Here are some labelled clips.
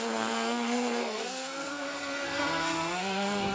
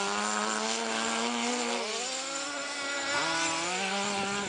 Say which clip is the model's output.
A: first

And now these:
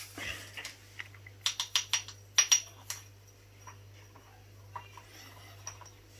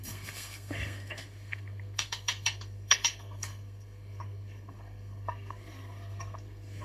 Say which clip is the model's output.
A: second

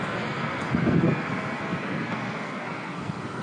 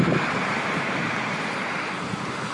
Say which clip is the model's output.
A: first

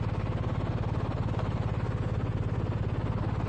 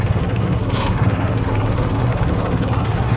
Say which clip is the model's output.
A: second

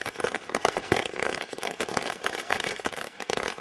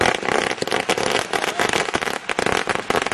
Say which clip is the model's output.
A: first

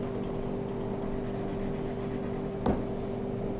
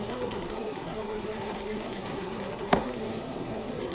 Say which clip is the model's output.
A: second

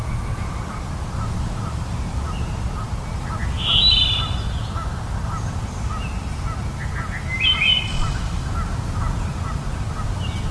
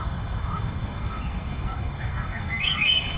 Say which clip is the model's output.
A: second